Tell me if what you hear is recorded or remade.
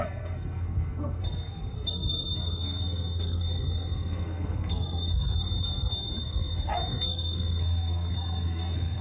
remade